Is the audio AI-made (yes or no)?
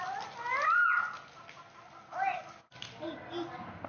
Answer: no